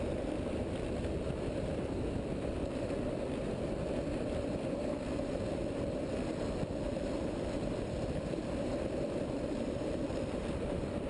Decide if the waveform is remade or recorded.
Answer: remade